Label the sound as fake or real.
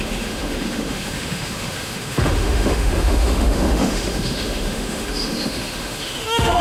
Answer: fake